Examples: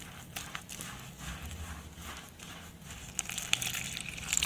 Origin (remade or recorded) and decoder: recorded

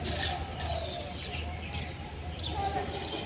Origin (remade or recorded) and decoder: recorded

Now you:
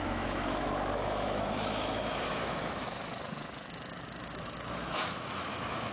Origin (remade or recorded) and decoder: remade, autoencoder, DAC-VAE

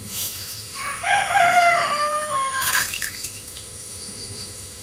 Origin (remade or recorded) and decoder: remade, autoencoder, DAC-VAE